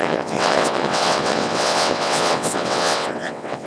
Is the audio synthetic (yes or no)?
yes